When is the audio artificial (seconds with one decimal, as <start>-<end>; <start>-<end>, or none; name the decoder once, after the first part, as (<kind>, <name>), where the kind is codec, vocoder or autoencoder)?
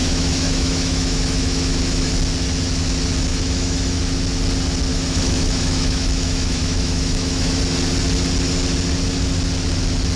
0.0-2.1 (autoencoder, DAC-VAE); 3.3-4.0; 4.9-7.6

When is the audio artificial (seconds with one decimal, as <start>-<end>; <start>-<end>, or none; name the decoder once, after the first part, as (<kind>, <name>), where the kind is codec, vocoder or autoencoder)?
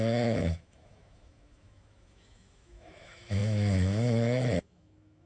0.0-5.3 (autoencoder, DAC-VAE)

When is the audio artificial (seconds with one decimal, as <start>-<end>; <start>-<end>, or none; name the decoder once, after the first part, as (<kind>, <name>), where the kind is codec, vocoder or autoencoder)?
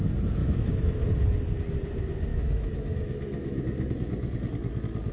0.4-1.1 (autoencoder, DAC-VAE); 2.3-3.6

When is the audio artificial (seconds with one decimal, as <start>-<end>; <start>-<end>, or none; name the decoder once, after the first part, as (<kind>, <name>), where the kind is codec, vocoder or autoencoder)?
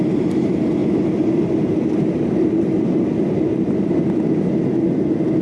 none